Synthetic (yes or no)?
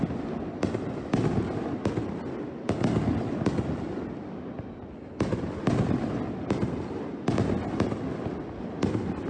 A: no